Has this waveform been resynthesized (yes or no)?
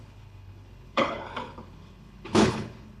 yes